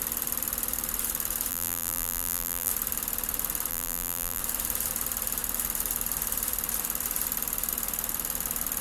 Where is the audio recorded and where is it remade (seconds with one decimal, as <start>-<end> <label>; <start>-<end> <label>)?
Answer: 0.0-1.5 recorded; 1.5-2.7 remade; 2.7-3.7 recorded; 3.7-4.4 remade; 4.4-8.8 recorded